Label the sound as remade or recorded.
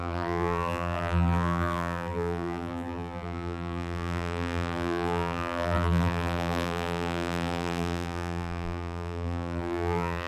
remade